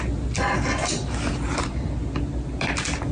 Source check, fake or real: real